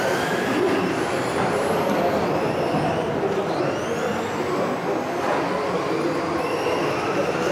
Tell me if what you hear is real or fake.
real